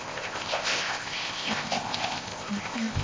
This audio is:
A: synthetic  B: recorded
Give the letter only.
A